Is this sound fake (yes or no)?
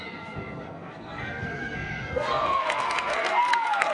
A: yes